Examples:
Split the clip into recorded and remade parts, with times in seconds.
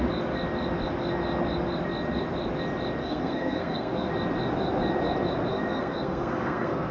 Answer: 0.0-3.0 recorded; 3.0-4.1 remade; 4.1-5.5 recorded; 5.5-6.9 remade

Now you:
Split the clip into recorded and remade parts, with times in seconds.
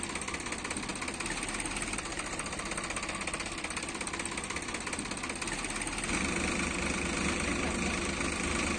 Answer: 0.0-8.8 recorded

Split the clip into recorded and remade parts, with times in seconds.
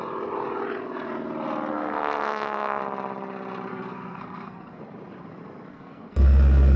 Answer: 0.0-1.7 recorded; 1.7-2.8 remade; 2.8-3.7 recorded; 3.7-4.8 remade; 4.8-5.7 recorded; 5.7-6.8 remade